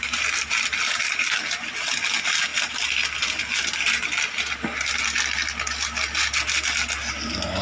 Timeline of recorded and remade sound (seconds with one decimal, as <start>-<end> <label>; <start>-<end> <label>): 0.0-7.6 recorded